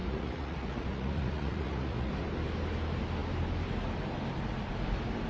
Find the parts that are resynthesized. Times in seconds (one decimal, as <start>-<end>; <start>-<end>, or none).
0.0-2.1